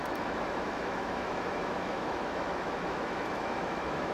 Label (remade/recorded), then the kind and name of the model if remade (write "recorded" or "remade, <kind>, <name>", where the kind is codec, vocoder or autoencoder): remade, autoencoder, DAC-VAE